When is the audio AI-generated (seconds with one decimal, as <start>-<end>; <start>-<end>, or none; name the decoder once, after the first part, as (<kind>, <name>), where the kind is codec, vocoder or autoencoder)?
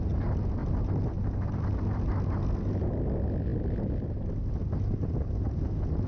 0.6-2.1 (vocoder, BigVGAN v2)